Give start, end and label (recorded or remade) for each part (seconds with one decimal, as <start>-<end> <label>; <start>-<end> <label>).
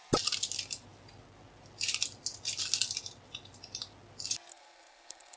0.0-4.5 recorded; 4.5-5.4 remade